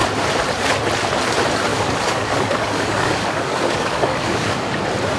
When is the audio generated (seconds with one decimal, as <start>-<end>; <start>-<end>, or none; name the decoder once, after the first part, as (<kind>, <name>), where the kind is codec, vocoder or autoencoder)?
1.7-4.8 (codec, DAC)